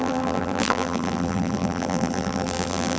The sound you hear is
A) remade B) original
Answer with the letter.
A